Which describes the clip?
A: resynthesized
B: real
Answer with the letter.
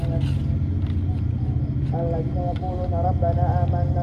B